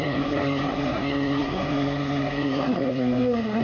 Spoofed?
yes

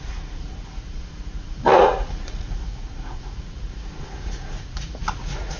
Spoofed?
yes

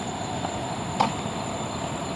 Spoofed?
no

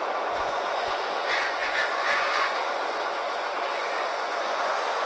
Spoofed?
yes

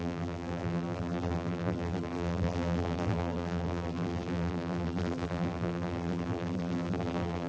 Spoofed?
yes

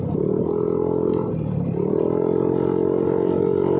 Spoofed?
no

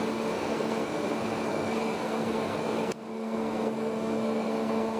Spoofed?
yes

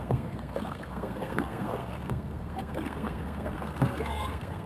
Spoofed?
yes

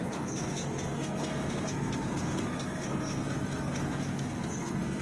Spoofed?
yes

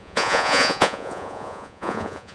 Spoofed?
yes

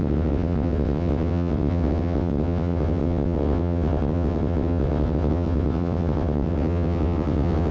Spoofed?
yes